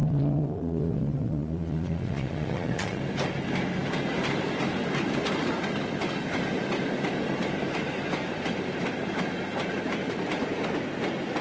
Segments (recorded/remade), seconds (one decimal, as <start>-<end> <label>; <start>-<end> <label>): 0.0-3.0 remade; 3.0-11.4 recorded